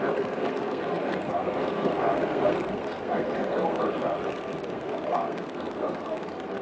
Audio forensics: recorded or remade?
remade